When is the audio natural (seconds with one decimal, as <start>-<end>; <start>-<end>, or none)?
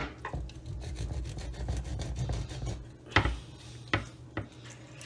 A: 0.0-5.1